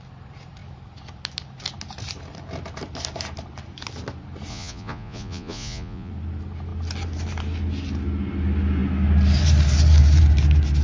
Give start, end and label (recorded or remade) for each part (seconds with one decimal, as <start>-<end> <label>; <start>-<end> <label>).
0.0-4.5 recorded; 4.5-6.1 remade; 6.1-10.8 recorded

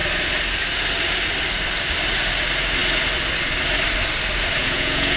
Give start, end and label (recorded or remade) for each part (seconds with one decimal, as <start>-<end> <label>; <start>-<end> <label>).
0.0-4.6 recorded; 4.6-5.2 remade

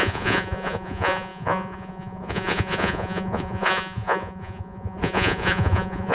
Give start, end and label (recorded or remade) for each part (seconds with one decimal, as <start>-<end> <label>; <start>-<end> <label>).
0.0-6.1 remade